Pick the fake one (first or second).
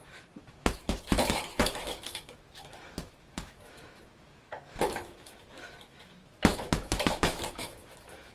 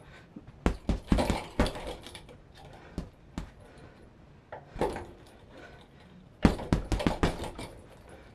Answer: first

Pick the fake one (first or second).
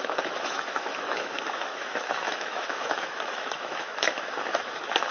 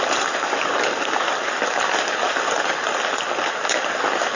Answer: first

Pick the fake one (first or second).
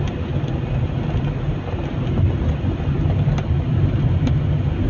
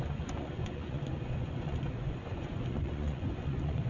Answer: second